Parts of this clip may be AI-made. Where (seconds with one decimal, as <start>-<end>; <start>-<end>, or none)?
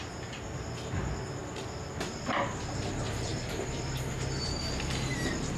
3.3-5.1